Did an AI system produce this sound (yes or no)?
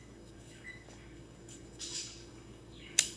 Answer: yes